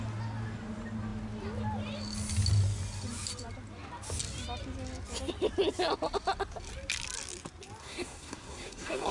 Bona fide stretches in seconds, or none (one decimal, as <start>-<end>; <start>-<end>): 0.0-7.8